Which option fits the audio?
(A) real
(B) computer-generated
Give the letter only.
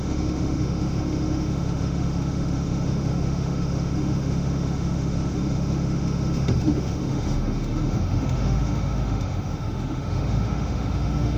B